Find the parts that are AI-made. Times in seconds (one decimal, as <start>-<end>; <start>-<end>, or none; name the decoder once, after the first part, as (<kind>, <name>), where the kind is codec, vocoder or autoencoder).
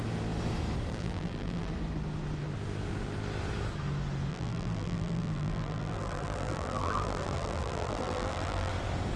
0.9-1.7 (vocoder, BigVGAN v2); 4.3-8.7